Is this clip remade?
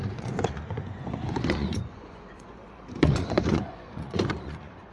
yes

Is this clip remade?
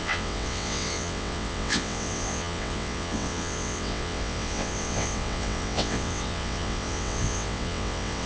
yes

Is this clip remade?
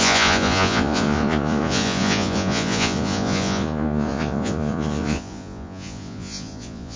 yes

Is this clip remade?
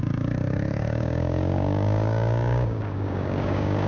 yes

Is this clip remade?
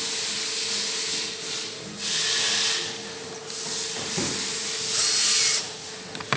no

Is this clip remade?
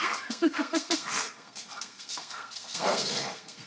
yes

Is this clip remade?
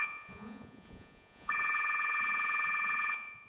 yes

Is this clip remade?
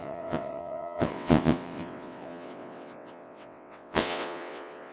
yes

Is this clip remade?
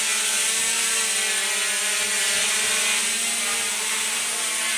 no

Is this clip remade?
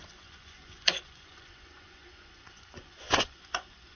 yes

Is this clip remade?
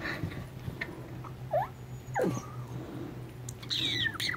no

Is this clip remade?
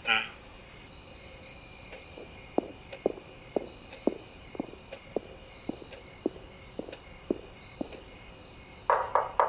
no